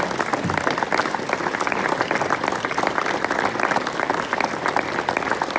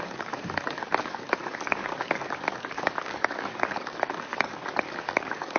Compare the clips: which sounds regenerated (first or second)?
second